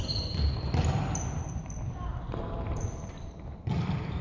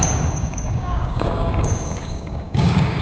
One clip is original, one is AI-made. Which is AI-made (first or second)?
second